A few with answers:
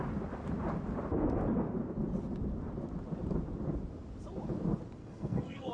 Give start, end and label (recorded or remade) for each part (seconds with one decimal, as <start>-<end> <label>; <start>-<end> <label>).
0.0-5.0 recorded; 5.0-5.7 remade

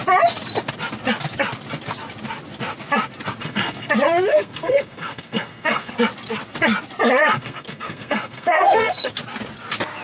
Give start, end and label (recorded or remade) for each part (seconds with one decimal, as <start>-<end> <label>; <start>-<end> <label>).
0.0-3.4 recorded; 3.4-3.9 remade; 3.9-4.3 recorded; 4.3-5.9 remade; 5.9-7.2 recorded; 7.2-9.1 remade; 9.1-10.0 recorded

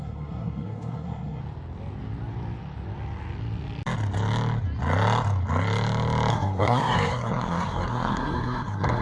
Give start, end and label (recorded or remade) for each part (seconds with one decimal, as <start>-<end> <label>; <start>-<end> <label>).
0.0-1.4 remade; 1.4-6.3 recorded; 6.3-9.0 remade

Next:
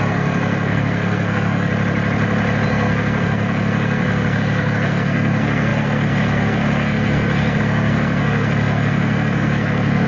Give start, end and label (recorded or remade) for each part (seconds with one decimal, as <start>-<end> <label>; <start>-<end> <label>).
0.0-1.7 remade; 1.7-2.7 recorded; 2.7-10.1 remade

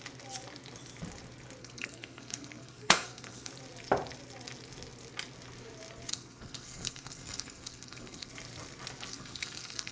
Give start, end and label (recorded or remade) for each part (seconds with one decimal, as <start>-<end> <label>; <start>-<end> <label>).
0.0-1.6 recorded; 1.6-3.5 remade; 3.5-6.1 recorded; 6.1-8.3 remade; 8.3-9.1 recorded; 9.1-9.9 remade

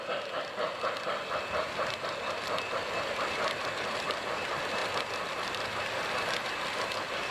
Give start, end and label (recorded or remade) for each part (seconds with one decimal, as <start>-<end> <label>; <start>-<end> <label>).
0.0-7.3 recorded